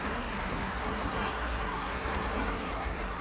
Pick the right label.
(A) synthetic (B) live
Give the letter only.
A